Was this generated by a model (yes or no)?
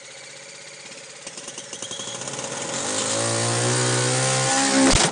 no